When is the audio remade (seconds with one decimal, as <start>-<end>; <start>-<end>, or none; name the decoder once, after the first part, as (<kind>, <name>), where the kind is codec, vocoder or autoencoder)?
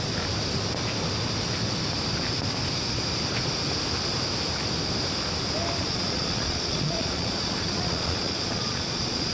5.8-9.3 (vocoder, Vocos)